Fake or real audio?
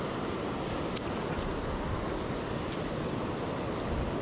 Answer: real